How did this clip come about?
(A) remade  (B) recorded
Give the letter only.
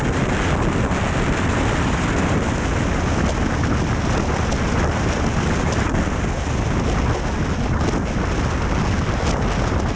B